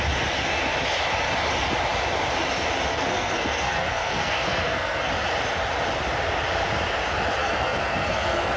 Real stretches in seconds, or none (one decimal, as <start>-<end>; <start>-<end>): 0.0-2.9; 5.1-7.4